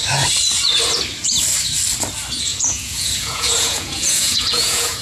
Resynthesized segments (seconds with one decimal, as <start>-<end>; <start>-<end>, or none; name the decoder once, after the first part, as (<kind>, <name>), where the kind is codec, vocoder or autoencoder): 2.5-5.0 (vocoder, Vocos)